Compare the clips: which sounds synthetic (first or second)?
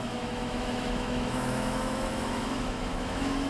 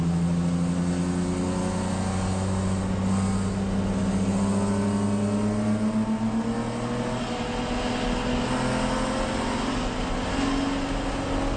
first